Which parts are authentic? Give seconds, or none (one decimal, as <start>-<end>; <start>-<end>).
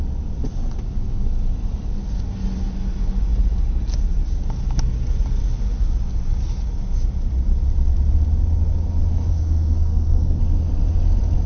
0.0-9.3; 10.4-11.5